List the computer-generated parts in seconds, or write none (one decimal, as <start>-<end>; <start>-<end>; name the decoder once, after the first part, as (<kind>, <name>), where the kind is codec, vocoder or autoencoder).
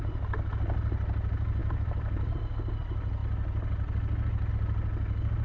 1.6-2.4 (vocoder, BigVGAN v2)